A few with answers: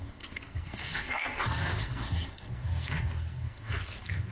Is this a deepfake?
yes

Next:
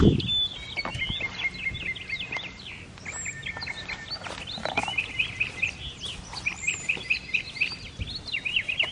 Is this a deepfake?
no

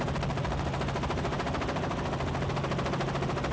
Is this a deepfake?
no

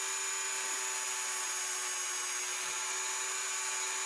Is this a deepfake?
no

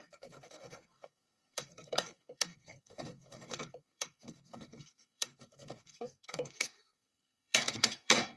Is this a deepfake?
yes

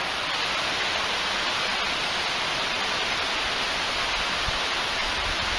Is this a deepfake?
no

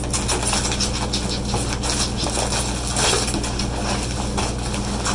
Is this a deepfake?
no